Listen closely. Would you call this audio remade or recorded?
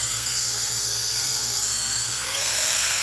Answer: remade